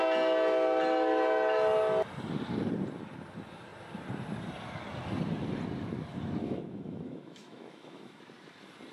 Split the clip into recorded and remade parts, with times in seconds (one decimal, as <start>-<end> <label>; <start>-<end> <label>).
0.0-6.4 recorded; 6.4-8.2 remade; 8.2-8.9 recorded